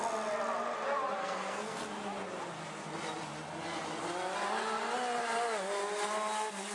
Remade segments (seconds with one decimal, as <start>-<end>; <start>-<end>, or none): 1.2-1.8